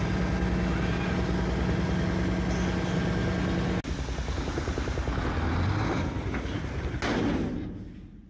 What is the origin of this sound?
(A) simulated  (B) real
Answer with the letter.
B